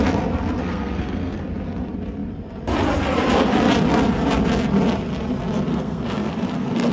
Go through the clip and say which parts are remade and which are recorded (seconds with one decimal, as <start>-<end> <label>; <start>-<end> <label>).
0.0-0.6 recorded; 0.6-1.4 remade; 1.4-5.7 recorded; 5.7-6.9 remade